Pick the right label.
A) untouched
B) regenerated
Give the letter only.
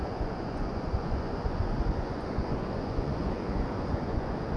B